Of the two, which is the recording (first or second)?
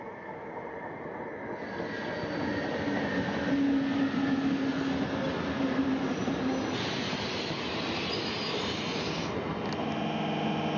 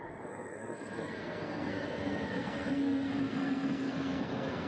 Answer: first